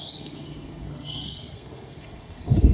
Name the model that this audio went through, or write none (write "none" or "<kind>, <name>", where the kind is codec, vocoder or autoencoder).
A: codec, SNAC